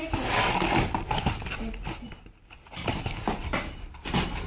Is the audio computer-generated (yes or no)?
no